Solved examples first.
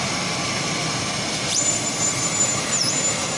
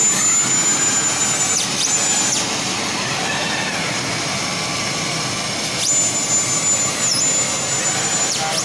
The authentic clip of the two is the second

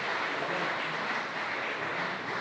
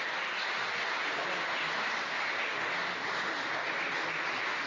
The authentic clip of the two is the second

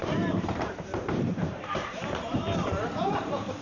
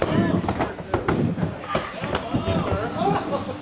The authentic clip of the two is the second